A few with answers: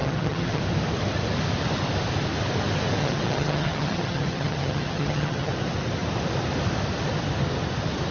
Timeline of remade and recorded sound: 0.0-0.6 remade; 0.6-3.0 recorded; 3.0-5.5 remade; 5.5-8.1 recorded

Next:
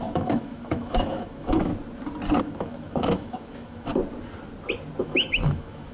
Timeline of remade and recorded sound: 0.0-1.7 remade; 1.7-2.4 recorded; 2.4-3.9 remade; 3.9-5.0 recorded; 5.0-5.9 remade

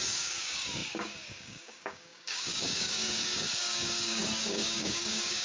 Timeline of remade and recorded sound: 0.0-5.4 remade

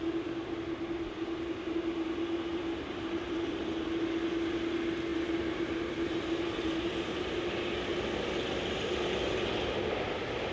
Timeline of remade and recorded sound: 0.0-2.5 recorded; 2.5-3.6 remade; 3.6-5.1 recorded; 5.1-7.4 remade; 7.4-10.5 recorded

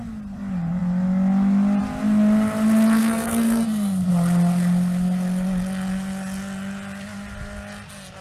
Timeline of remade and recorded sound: 0.0-3.0 recorded; 3.0-4.1 remade; 4.1-8.2 recorded

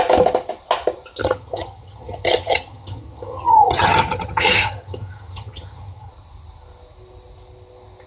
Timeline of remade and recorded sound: 0.0-1.2 recorded; 1.2-6.1 remade; 6.1-8.1 recorded

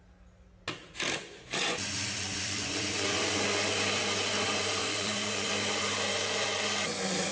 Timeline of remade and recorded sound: 0.0-1.2 recorded; 1.2-3.3 remade; 3.3-4.8 recorded; 4.8-5.5 remade; 5.5-7.3 recorded

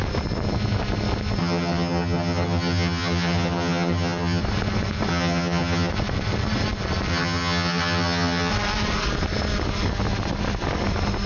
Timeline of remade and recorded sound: 0.0-1.4 recorded; 1.4-4.4 remade; 4.4-5.1 recorded; 5.1-5.9 remade; 5.9-7.1 recorded; 7.1-8.5 remade; 8.5-11.3 recorded